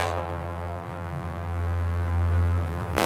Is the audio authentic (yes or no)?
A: no